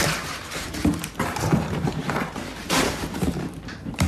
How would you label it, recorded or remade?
remade